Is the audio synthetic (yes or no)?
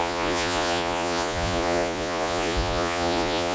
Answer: yes